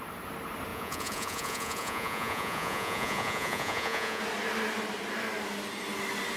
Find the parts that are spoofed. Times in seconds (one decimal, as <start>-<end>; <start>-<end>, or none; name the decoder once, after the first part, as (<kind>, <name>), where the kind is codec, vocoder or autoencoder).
0.7-4.2 (vocoder, Vocos)